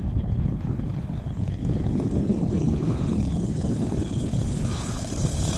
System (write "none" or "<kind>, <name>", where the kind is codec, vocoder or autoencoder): codec, HILCodec